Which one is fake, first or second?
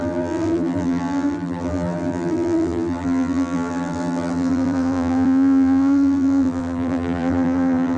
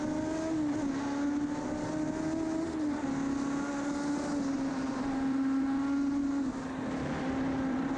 first